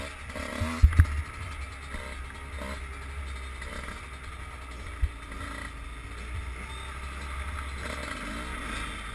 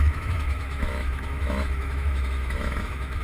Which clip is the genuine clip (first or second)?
first